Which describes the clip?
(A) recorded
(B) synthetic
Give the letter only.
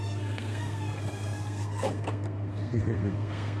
B